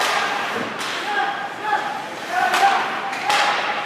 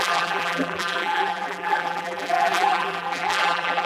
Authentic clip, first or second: first